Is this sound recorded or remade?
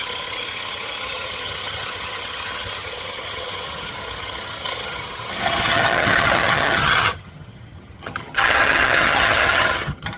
remade